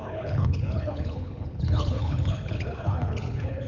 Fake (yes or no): yes